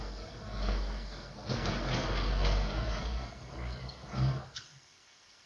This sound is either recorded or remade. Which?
remade